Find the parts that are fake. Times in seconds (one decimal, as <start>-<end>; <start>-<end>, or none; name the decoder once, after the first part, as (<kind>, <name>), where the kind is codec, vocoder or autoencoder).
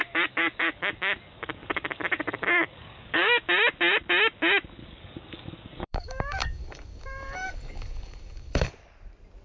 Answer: 0.0-3.4 (codec, DAC); 4.8-8.7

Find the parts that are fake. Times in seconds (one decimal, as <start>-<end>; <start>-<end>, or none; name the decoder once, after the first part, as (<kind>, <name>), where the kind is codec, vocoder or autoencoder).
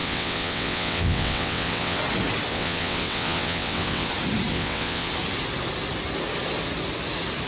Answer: 0.0-2.0 (vocoder, WaveNeXt); 2.5-4.1; 4.5-5.1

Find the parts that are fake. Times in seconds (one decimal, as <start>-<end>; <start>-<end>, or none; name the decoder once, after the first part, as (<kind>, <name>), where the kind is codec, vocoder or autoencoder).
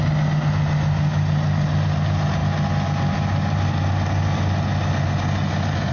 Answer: none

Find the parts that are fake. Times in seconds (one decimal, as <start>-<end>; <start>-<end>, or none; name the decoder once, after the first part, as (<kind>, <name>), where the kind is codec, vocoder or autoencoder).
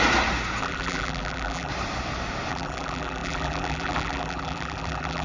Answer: 0.6-1.7 (vocoder, BigVGAN v2); 2.5-5.2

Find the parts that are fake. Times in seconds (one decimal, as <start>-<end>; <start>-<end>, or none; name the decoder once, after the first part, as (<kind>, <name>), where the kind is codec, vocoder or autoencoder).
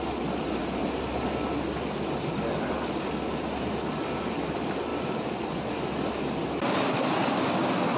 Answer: none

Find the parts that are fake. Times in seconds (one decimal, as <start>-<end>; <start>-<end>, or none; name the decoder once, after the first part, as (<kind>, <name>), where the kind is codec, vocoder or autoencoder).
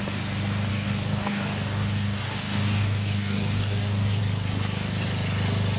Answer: 0.7-4.2 (codec, DAC)